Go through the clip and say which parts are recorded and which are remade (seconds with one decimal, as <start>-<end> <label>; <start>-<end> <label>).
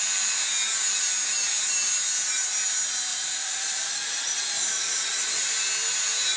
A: 0.0-3.1 recorded; 3.1-5.4 remade; 5.4-6.4 recorded